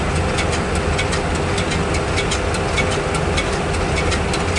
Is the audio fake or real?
real